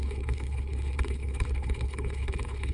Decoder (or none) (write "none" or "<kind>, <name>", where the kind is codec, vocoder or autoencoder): codec, HILCodec